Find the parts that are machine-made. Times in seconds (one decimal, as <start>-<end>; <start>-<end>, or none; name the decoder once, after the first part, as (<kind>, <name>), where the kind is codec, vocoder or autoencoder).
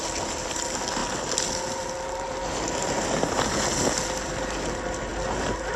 none